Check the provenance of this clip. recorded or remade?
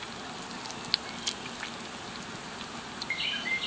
recorded